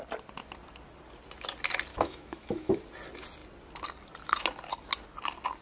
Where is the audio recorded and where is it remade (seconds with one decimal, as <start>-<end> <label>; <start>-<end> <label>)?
0.0-1.9 recorded; 1.9-2.8 remade; 2.8-5.6 recorded

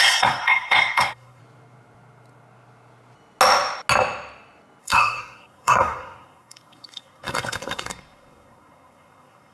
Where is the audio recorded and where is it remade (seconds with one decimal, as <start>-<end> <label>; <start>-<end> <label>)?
0.0-1.4 remade; 1.4-4.8 recorded; 4.8-9.5 remade

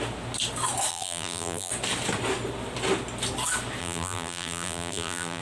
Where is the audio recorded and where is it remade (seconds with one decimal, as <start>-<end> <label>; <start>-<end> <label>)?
0.0-0.9 recorded; 0.9-1.7 remade; 1.7-3.8 recorded; 3.8-5.4 remade

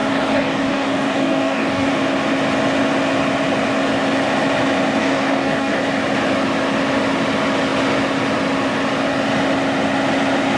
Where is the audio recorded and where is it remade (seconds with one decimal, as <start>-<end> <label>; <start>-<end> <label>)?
0.0-1.9 remade; 1.9-5.0 recorded; 5.0-5.8 remade; 5.8-10.6 recorded

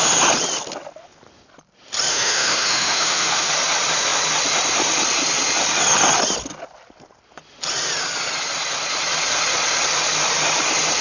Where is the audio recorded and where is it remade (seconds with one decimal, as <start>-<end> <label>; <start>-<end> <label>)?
0.0-2.1 recorded; 2.1-3.5 remade; 3.5-11.0 recorded